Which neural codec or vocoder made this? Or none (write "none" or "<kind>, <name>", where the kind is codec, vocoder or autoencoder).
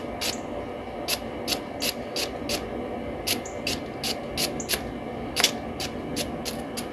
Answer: none